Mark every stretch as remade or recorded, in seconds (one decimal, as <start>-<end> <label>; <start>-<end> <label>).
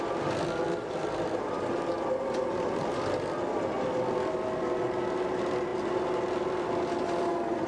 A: 0.0-7.7 recorded